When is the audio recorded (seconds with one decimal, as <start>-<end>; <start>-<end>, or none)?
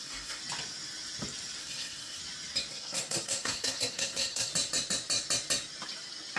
0.4-1.6; 2.2-2.7; 4.5-6.4